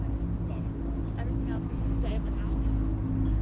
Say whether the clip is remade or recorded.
recorded